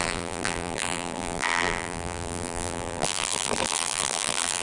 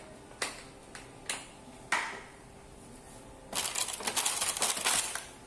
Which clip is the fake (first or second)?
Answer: first